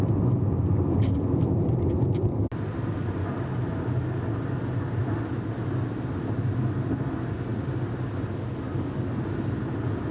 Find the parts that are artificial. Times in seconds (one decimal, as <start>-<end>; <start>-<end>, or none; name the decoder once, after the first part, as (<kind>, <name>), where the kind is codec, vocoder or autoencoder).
none